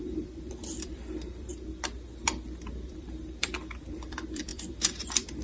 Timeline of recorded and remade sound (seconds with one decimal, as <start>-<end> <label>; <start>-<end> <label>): 0.0-1.5 remade; 1.5-2.9 recorded; 2.9-5.4 remade